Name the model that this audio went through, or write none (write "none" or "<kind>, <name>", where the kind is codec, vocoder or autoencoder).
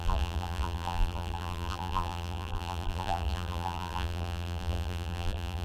vocoder, BigVGAN v2